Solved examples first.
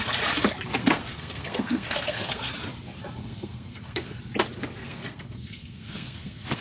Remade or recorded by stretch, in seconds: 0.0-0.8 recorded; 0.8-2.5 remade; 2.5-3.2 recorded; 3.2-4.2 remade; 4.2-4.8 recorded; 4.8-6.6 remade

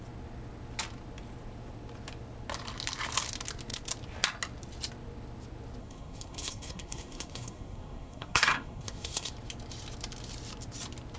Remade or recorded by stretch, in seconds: 0.0-5.8 recorded; 5.8-9.3 remade; 9.3-11.2 recorded

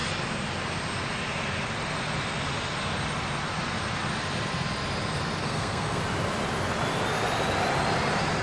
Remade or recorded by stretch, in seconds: 0.0-5.4 recorded; 5.4-6.0 remade; 6.0-8.4 recorded

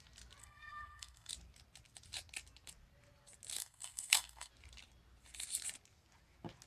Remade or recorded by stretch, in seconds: 0.0-0.4 recorded; 0.4-1.3 remade; 1.3-3.6 recorded; 3.6-4.5 remade; 4.5-6.7 recorded

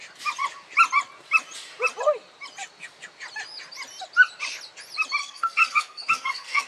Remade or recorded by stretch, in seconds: 0.0-5.2 recorded; 5.2-6.7 remade

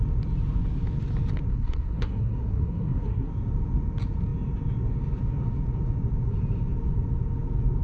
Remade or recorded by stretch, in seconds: 0.0-1.5 recorded; 1.5-3.3 remade; 3.3-7.8 recorded